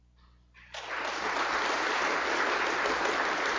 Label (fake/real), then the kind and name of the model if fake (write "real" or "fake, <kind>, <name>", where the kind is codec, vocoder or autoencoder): real